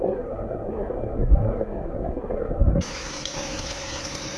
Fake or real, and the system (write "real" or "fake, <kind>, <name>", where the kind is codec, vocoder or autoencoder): fake, codec, SNAC